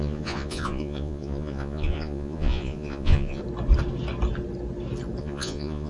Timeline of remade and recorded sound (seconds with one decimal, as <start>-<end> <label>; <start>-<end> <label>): 0.0-3.4 remade; 3.4-5.2 recorded; 5.2-5.9 remade